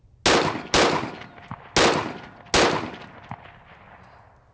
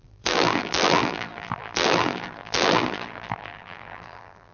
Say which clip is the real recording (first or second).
first